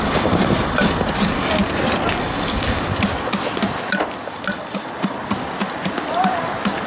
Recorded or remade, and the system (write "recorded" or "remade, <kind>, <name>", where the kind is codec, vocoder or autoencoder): recorded